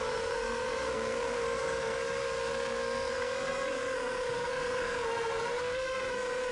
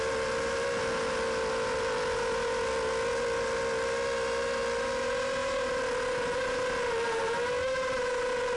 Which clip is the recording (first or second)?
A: second